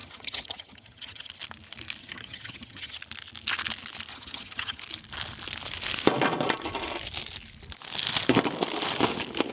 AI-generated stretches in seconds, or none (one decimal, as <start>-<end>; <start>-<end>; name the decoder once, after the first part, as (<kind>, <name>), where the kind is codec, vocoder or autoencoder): 0.0-1.3 (vocoder, HiFi-GAN); 2.0-3.0; 4.1-4.8